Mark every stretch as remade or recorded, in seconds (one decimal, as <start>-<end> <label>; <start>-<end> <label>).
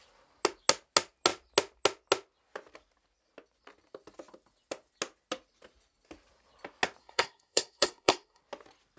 0.0-7.0 recorded; 7.0-8.4 remade; 8.4-9.0 recorded